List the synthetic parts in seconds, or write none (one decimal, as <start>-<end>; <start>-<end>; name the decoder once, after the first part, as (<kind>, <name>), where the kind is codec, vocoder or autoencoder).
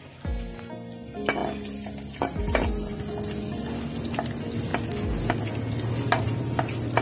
none